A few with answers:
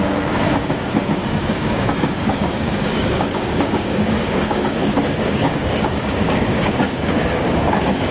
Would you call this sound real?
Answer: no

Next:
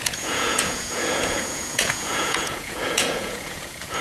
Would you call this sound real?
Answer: no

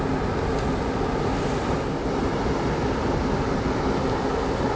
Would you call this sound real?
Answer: yes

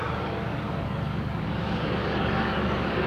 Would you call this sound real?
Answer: no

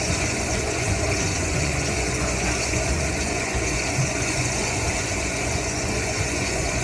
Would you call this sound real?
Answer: no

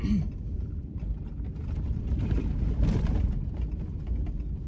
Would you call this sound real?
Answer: yes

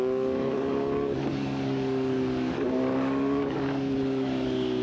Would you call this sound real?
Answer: no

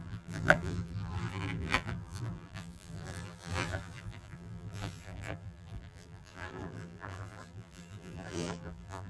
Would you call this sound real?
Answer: no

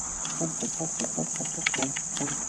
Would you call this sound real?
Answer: no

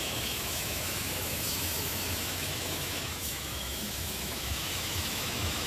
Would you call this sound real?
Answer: no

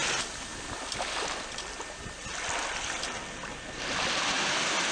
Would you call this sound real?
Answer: yes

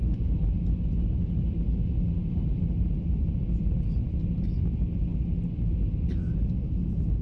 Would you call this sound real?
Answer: yes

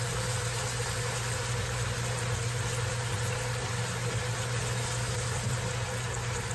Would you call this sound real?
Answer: yes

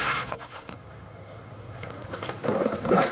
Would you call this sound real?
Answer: no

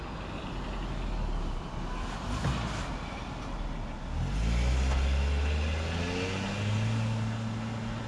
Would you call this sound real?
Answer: yes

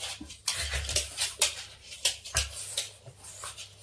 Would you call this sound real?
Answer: no